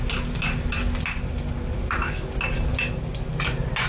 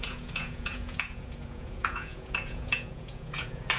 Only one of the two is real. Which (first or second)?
first